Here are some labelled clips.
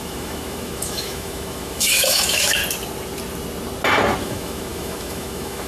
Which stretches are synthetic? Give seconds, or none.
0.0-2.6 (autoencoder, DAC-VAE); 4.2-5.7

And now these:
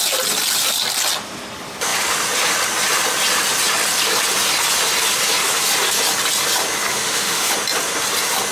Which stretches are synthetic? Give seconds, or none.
6.9-7.5 (autoencoder, DAC-VAE)

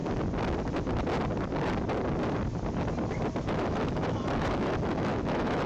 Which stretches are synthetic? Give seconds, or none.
3.4-5.7 (autoencoder, DAC-VAE)